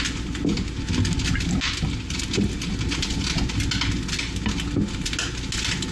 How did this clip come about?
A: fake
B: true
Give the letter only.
B